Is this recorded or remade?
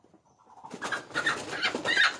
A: recorded